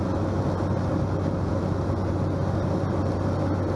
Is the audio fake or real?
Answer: real